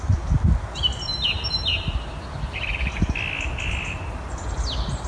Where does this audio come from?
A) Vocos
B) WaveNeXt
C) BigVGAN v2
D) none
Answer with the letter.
D